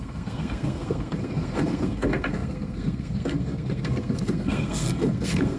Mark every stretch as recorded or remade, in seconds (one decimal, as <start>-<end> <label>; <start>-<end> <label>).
0.0-5.6 remade